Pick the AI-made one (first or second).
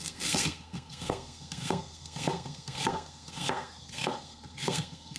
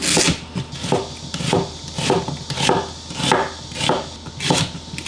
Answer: first